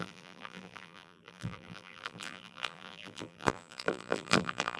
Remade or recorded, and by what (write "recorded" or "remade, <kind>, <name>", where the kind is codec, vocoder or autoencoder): remade, vocoder, BigVGAN v2